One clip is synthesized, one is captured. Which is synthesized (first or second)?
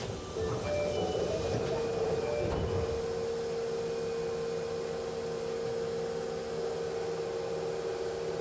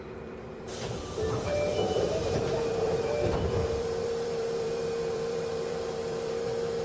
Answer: second